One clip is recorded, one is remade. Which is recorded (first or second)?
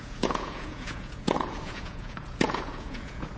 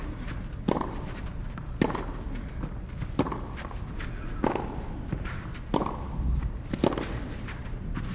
second